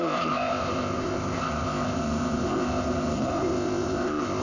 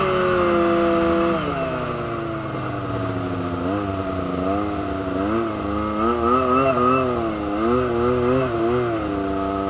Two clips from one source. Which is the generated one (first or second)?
first